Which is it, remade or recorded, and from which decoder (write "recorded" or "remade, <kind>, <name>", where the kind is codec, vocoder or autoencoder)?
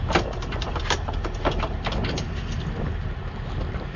recorded